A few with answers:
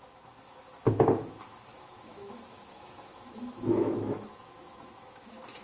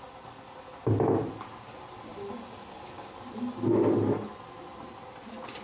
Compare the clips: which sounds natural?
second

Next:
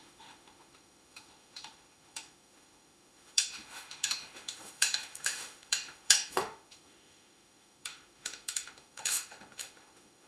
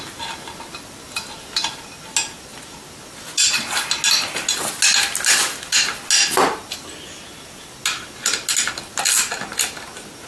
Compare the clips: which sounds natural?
second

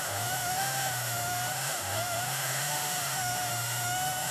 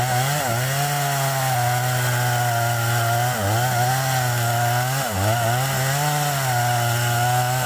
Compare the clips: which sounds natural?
second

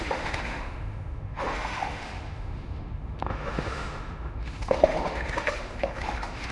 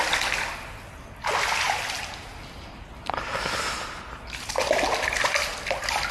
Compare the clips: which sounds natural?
second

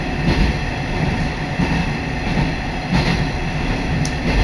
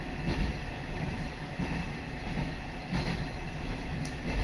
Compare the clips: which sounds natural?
first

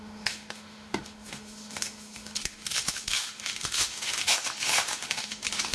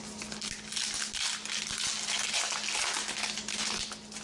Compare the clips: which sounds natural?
second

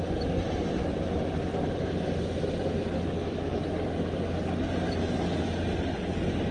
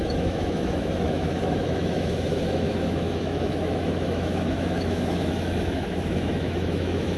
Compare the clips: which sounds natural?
first